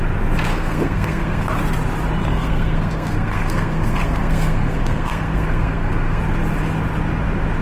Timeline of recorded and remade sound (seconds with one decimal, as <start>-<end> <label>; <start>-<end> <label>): 0.0-0.5 recorded; 0.5-1.5 remade; 1.5-2.3 recorded; 2.3-6.2 remade; 6.2-7.6 recorded